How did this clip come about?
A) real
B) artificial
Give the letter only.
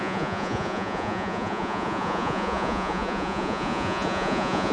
B